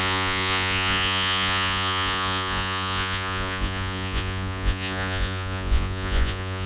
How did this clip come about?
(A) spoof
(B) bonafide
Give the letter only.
A